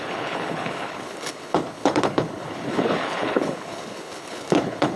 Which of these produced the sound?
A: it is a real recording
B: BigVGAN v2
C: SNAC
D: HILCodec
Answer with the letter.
D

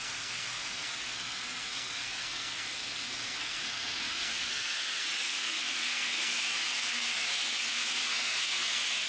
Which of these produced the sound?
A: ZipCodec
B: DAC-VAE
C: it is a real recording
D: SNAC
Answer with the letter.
D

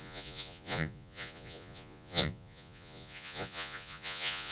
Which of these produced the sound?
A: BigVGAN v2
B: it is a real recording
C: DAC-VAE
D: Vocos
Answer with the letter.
D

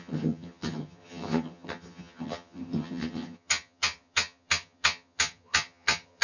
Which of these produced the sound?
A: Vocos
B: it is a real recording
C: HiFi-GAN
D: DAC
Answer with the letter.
C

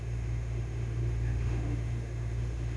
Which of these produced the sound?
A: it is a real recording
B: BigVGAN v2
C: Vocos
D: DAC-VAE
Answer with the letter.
D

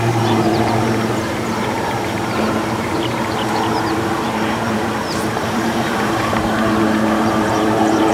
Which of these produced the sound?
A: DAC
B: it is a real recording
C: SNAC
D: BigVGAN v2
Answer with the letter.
D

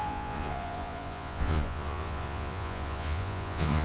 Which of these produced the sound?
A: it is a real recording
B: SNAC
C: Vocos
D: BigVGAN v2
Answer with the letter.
C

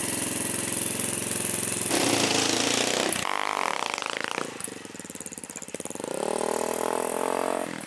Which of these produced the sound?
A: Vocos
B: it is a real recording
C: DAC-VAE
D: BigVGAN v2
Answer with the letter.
B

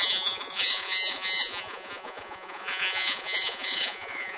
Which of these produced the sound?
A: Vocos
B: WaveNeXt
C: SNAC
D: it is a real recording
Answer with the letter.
A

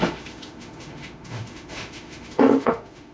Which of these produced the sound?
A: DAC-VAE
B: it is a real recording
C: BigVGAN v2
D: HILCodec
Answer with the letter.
A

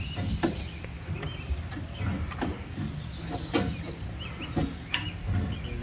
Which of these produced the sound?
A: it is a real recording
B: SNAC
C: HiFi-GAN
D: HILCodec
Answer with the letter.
A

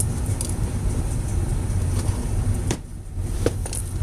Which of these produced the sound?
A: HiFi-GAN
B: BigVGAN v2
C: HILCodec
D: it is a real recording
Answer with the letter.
B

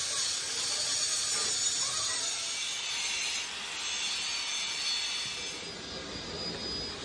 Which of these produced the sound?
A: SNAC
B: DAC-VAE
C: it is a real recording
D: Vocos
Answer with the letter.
C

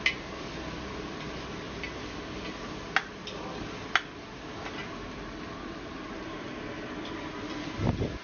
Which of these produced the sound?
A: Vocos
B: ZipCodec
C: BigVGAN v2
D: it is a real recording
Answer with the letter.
D